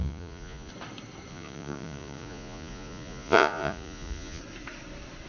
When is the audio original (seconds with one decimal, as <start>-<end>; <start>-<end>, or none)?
0.7-1.3; 4.4-5.3